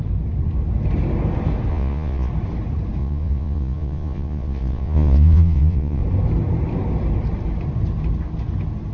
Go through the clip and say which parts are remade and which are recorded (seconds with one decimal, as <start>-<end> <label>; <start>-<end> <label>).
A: 0.0-1.7 recorded; 1.7-2.3 remade; 2.3-3.0 recorded; 3.0-6.0 remade; 6.0-8.9 recorded